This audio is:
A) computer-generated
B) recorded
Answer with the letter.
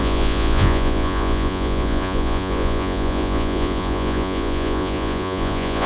A